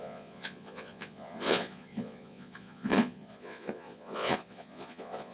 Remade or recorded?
remade